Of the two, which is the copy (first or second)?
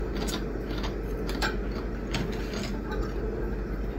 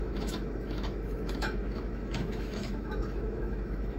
second